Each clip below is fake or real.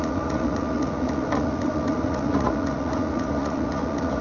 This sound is fake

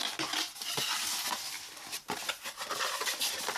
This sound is real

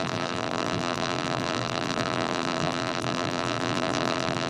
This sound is fake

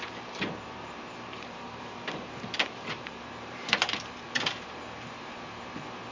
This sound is fake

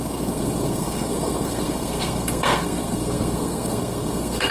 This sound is fake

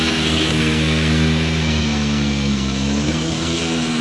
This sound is fake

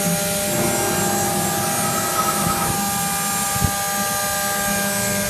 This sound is real